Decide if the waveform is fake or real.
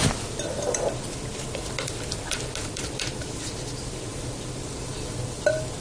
real